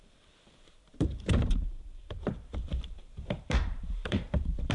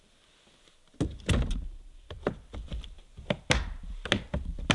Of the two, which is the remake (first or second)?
first